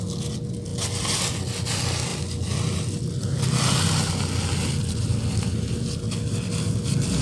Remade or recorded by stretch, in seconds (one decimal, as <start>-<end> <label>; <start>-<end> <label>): 0.0-7.2 recorded